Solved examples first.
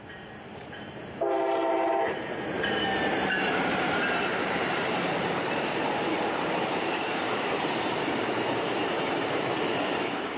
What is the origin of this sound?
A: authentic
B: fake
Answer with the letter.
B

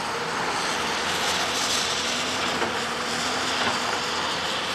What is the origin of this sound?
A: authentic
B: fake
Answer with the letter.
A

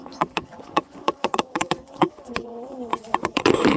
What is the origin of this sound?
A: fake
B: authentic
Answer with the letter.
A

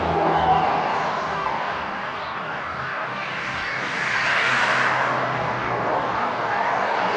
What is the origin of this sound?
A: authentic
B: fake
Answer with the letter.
B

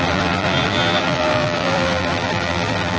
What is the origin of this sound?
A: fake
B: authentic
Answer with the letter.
A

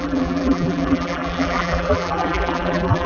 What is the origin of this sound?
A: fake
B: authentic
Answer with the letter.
A